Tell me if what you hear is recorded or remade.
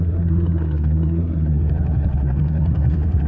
remade